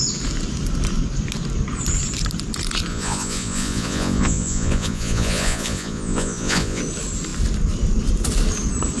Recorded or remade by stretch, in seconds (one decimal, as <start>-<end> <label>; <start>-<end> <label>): 0.0-2.9 recorded; 2.9-6.8 remade; 6.8-9.0 recorded